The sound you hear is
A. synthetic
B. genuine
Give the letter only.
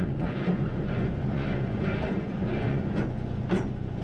A